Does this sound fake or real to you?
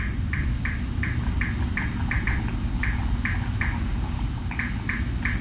real